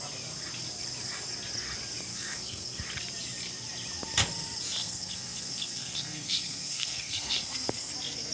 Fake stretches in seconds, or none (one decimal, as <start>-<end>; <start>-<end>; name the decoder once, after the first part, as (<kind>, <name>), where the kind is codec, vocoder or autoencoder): 2.1-2.8 (codec, SNAC); 4.8-7.9